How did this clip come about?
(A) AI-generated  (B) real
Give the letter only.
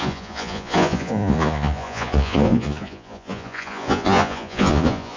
A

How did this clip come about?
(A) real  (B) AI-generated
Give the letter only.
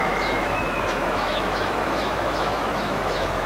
B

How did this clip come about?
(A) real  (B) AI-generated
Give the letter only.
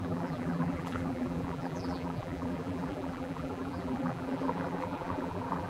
B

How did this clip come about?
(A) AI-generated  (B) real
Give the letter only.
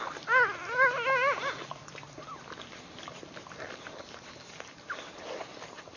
B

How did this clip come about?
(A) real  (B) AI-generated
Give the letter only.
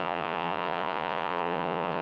B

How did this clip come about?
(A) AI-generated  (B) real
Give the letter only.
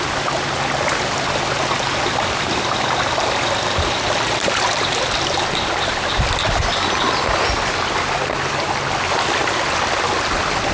B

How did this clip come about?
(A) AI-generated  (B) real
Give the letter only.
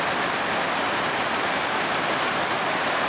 B